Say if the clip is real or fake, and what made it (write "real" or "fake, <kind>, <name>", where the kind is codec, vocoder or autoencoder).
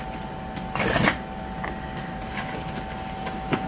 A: real